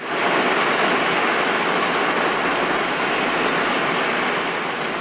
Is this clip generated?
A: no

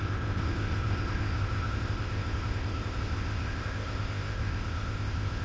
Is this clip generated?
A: yes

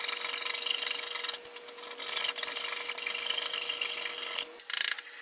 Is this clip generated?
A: no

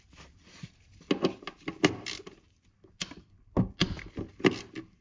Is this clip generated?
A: no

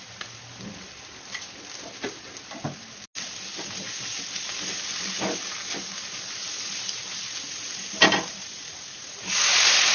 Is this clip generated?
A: no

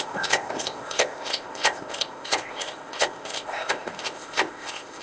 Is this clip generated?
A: yes